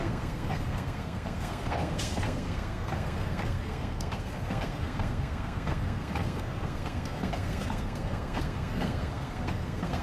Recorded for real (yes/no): no